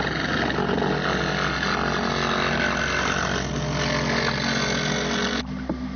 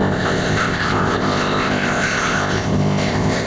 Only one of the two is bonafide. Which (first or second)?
first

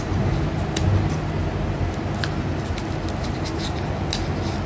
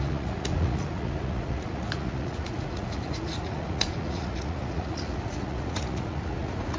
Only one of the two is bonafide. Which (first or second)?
first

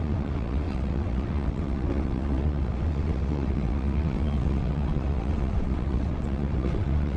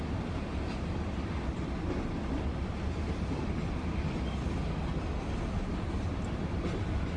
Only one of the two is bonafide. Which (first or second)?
second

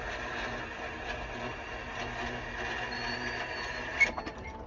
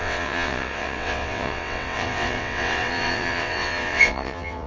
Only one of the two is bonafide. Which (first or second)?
first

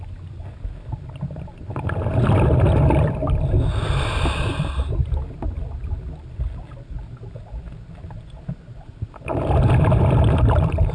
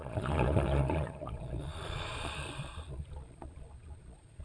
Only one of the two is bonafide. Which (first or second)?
first